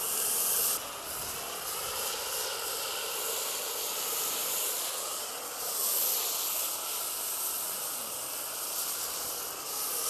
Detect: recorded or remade recorded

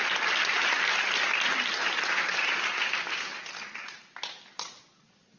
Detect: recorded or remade recorded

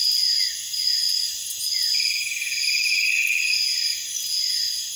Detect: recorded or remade recorded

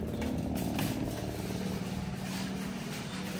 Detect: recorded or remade recorded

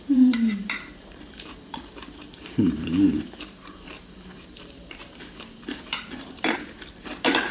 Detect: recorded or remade remade